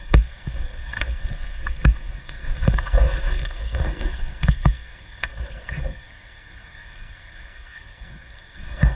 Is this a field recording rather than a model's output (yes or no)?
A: no